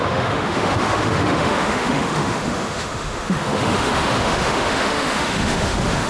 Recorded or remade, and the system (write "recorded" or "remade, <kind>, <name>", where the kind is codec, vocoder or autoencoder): remade, autoencoder, DAC-VAE